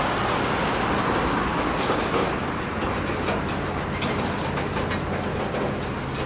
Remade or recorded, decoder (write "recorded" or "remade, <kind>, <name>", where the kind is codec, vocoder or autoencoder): recorded